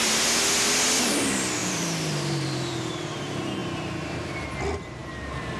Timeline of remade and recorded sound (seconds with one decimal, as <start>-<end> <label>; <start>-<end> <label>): 0.0-1.6 recorded; 1.6-2.7 remade; 2.7-3.6 recorded; 3.6-4.3 remade; 4.3-5.6 recorded

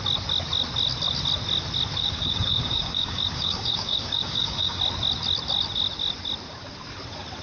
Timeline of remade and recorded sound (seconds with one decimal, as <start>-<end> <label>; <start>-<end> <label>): 0.0-2.0 recorded; 2.0-4.8 remade; 4.8-7.4 recorded

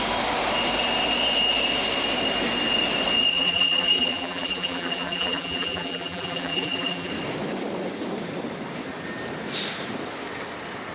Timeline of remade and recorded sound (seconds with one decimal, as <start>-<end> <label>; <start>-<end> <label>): 0.0-3.3 recorded; 3.3-7.1 remade; 7.1-10.9 recorded